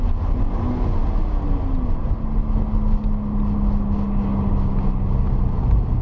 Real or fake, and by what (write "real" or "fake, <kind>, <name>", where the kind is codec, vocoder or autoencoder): real